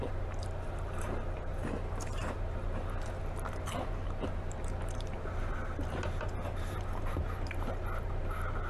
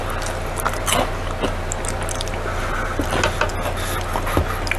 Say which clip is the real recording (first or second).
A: second